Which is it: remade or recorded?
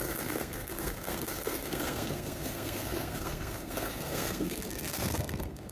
remade